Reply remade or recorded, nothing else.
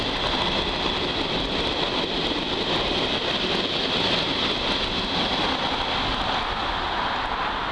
recorded